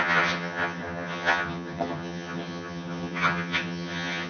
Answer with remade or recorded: remade